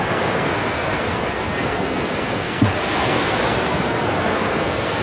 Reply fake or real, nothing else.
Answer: fake